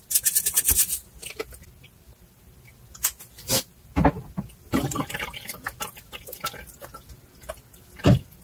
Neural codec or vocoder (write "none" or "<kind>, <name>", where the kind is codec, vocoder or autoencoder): none